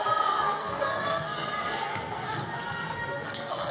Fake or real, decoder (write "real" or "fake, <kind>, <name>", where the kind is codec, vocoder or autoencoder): fake, codec, SNAC